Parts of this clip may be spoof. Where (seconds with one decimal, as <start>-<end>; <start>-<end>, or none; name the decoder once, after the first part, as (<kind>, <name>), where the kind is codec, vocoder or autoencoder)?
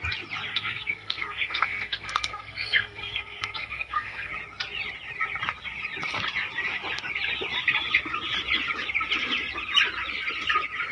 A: 0.5-4.3 (codec, SNAC)